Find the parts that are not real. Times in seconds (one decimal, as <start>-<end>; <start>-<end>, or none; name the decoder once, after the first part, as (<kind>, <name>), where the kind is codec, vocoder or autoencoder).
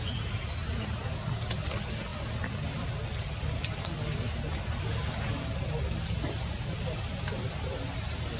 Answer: 0.6-1.1 (vocoder, BigVGAN v2)